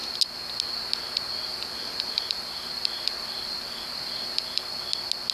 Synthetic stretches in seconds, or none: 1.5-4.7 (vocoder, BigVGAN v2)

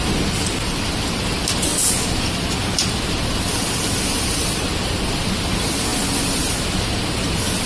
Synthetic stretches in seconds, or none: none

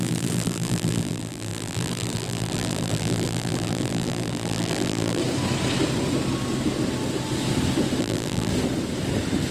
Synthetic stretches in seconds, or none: 0.0-5.2 (vocoder, BigVGAN v2); 8.0-8.5

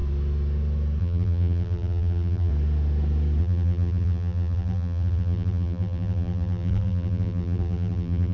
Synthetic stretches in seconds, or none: 1.0-2.5 (vocoder, BigVGAN v2); 3.4-8.3

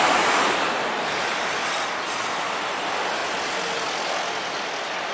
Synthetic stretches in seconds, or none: 0.0-3.2 (vocoder, BigVGAN v2)